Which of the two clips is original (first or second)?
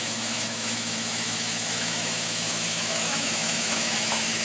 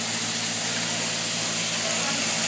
second